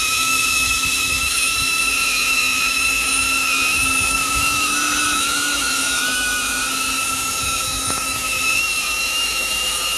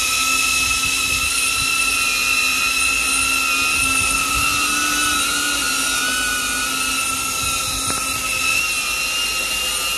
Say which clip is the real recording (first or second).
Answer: second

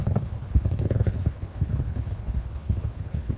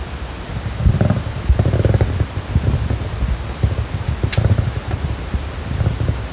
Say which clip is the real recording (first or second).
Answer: second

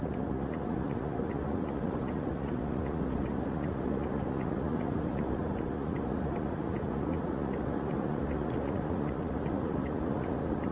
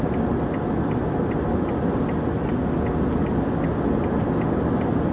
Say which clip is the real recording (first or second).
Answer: second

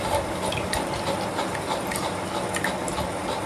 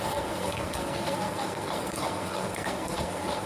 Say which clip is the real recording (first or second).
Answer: first